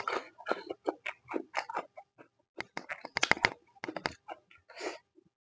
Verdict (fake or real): real